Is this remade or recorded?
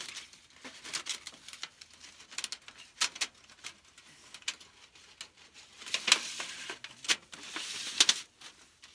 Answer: recorded